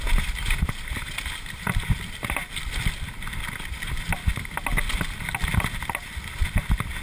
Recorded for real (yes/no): yes